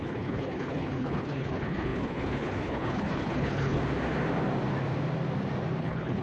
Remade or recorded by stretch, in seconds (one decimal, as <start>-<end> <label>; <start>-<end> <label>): 0.0-3.8 remade; 3.8-5.8 recorded; 5.8-6.2 remade